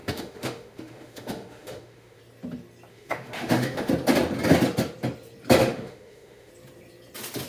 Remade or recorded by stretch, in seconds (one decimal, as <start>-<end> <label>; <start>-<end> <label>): 0.0-2.2 remade; 2.2-2.9 recorded; 2.9-3.9 remade; 3.9-5.6 recorded; 5.6-6.5 remade; 6.5-7.5 recorded